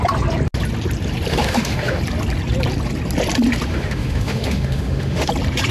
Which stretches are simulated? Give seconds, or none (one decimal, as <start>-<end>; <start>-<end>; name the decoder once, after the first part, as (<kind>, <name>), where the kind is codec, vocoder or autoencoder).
1.3-2.0 (autoencoder, DAC-VAE); 3.7-5.3